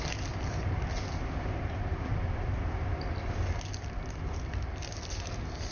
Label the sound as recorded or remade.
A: recorded